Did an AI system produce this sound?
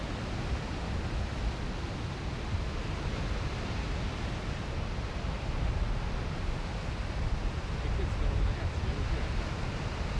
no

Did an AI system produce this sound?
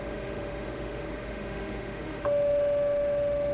yes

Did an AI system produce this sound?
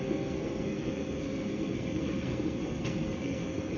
yes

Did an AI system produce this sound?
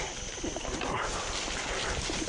no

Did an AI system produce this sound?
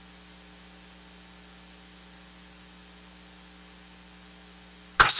no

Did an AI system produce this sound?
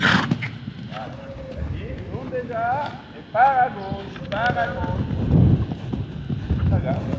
no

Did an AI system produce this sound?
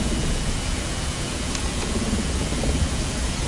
yes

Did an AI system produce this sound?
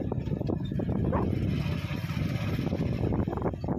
no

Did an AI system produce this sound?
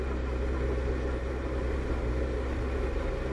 no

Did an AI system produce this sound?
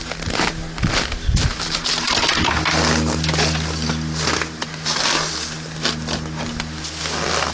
no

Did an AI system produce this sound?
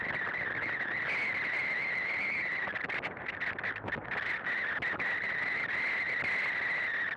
no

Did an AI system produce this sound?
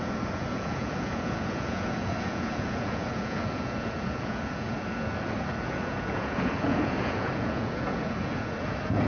yes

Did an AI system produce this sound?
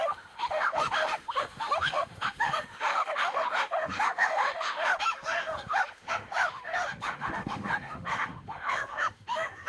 yes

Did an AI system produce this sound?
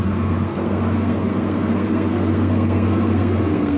yes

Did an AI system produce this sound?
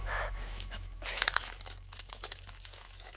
yes